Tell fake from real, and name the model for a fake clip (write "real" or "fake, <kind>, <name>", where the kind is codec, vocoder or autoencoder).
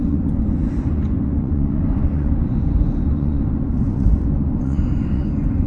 fake, vocoder, Vocos